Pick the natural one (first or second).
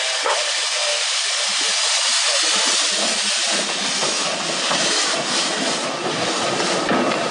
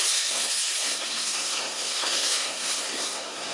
first